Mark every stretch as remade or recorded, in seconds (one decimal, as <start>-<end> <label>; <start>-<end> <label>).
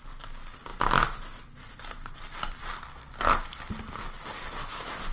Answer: 0.0-5.1 recorded